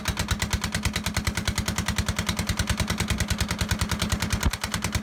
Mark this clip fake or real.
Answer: real